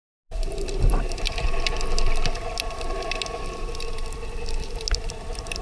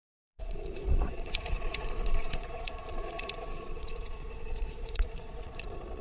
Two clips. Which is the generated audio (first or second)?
second